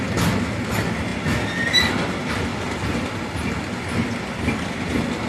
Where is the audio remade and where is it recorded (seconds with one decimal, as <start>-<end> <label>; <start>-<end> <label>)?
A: 0.0-5.3 recorded